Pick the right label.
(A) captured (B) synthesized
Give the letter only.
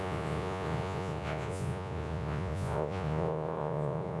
B